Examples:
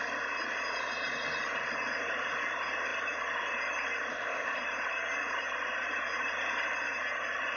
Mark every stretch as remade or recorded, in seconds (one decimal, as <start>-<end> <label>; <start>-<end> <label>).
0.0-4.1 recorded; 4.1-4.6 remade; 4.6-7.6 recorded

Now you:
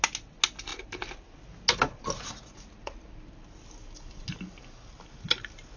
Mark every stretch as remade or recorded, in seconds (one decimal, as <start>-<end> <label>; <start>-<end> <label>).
0.0-5.8 recorded

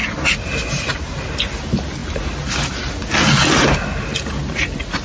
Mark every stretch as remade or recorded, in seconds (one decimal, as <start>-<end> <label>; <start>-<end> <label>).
0.0-5.0 recorded

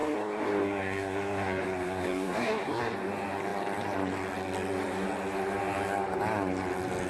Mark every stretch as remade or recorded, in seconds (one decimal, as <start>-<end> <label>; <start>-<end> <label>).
0.0-2.8 remade; 2.8-7.1 recorded